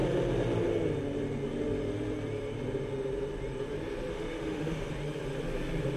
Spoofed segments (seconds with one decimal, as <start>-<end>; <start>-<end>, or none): 4.1-4.9